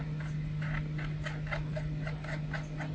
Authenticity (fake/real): real